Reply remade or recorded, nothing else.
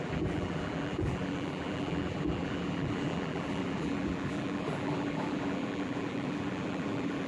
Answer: remade